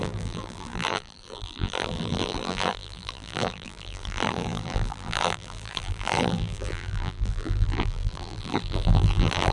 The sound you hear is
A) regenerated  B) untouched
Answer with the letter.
A